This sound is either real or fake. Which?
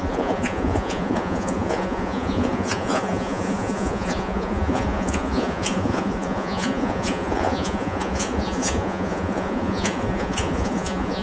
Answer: fake